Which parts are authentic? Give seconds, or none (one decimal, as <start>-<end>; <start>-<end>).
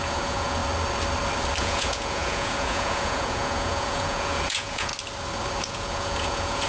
0.6-1.6; 4.9-5.6